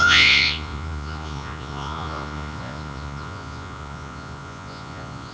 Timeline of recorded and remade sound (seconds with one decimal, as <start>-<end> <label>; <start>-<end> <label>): 0.0-5.3 remade